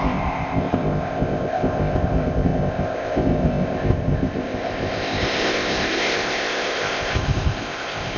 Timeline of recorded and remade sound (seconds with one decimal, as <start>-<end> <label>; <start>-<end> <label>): 0.0-8.2 remade

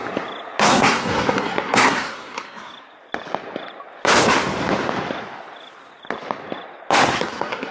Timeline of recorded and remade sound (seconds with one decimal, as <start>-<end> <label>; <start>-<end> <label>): 0.0-0.6 recorded; 0.6-2.7 remade; 2.7-7.2 recorded; 7.2-7.7 remade